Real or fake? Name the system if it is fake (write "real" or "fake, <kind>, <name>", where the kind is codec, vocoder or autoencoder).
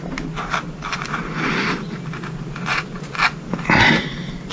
real